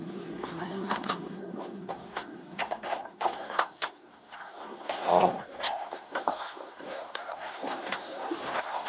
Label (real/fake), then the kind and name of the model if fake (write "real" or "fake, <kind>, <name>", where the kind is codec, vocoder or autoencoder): fake, codec, SNAC